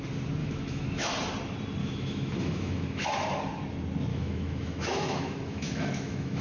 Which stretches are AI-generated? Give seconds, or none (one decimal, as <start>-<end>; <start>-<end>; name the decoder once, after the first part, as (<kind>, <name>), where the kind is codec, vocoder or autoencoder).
0.4-1.1 (autoencoder, DAC-VAE); 1.8-3.1; 4.1-6.4